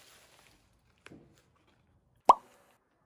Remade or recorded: recorded